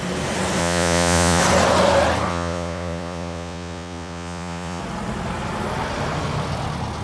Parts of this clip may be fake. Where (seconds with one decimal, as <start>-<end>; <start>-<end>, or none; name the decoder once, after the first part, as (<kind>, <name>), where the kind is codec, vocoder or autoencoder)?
0.6-1.4 (vocoder, Vocos); 2.3-4.8